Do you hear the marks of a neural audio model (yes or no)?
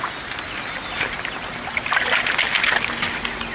no